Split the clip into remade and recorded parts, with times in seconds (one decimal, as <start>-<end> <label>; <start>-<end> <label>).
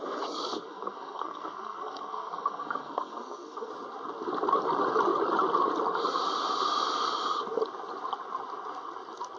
0.0-0.4 recorded; 0.4-3.7 remade; 3.7-9.4 recorded